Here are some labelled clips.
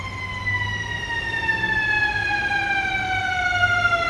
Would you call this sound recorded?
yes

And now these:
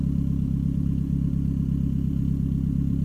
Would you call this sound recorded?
no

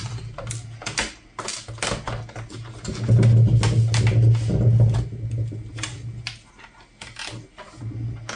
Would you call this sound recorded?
yes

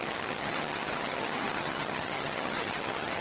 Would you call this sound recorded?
no